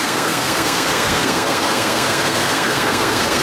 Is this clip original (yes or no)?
no